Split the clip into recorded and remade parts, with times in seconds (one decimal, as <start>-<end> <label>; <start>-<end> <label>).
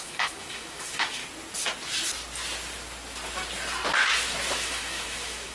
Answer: 0.0-1.2 remade; 1.2-4.5 recorded; 4.5-5.5 remade